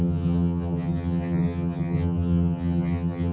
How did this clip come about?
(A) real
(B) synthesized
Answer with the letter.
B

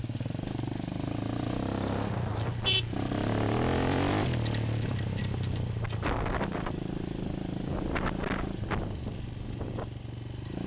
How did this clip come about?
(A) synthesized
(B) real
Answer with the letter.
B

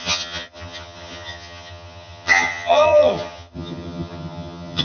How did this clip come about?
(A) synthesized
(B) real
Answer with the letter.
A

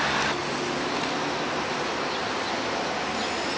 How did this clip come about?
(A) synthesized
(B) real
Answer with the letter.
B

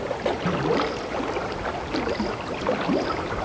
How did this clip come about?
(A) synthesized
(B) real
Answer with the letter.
B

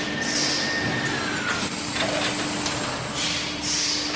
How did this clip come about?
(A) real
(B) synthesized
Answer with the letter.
A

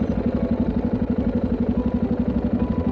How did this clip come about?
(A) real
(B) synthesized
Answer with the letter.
A